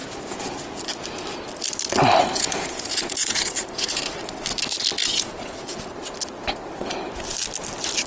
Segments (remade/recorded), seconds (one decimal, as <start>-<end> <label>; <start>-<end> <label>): 0.0-0.8 remade; 0.8-2.3 recorded; 2.3-4.0 remade; 4.0-5.0 recorded; 5.0-5.8 remade; 5.8-8.1 recorded